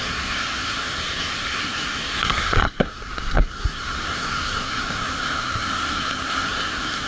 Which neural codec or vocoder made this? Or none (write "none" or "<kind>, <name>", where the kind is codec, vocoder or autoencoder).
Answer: codec, SNAC